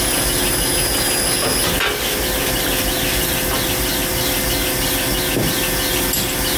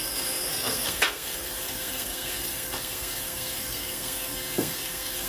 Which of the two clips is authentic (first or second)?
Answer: first